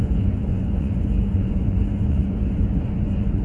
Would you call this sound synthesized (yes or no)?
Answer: yes